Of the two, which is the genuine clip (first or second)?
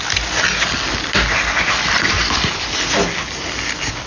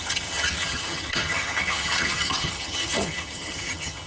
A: first